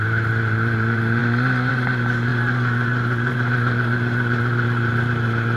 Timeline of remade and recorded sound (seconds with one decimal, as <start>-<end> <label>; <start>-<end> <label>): 0.0-1.2 remade; 1.2-1.7 recorded; 1.7-5.6 remade